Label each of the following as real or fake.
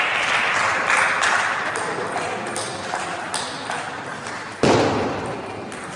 real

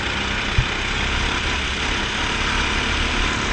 real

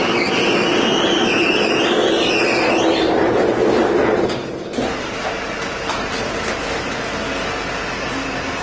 real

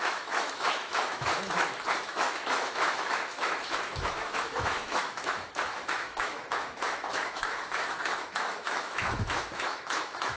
fake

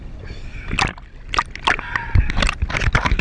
real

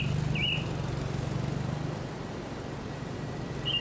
real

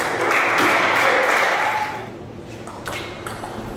real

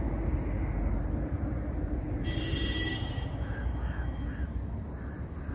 real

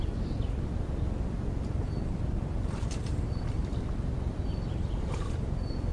real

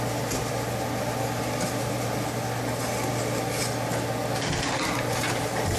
real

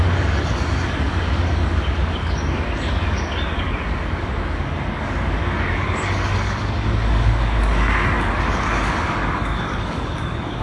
fake